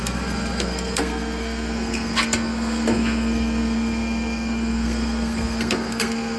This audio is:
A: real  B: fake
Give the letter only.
B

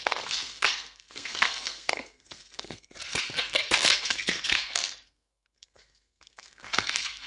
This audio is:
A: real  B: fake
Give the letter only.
B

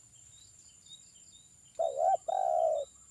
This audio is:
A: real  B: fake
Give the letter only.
A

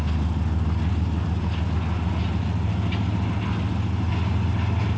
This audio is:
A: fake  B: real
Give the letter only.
B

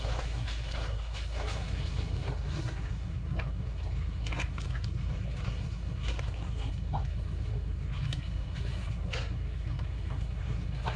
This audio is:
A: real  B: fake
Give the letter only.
B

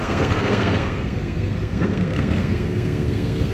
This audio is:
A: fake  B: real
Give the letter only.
A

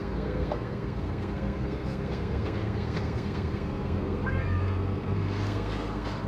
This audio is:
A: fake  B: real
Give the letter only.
A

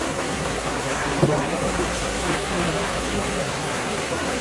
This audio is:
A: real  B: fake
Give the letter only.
B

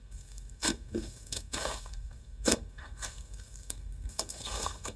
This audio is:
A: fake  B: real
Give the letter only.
A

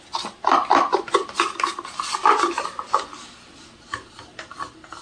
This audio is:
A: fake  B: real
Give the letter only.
B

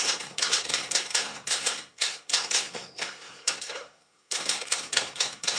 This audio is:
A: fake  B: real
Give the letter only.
A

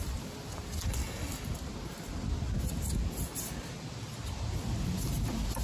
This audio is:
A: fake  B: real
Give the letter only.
B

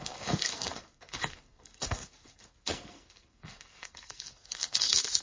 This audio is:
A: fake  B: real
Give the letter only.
A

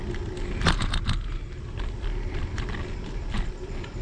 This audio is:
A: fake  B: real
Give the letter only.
B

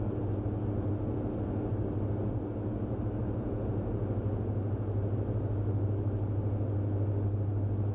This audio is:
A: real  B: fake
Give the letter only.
A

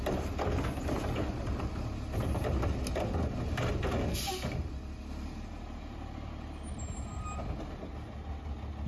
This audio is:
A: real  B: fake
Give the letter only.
A